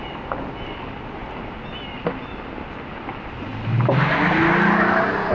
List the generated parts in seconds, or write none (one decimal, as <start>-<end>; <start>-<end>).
none